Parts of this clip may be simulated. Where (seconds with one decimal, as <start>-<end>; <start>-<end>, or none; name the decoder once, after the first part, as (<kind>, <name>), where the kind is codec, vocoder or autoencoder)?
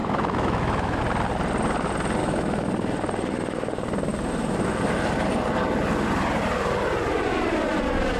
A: 0.0-1.0 (autoencoder, DAC-VAE); 2.2-2.7